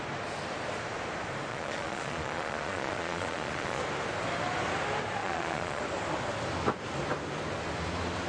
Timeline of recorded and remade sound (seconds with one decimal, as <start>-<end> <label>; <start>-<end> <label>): 0.0-1.5 recorded; 1.5-3.8 remade; 3.8-5.2 recorded; 5.2-5.8 remade; 5.8-8.3 recorded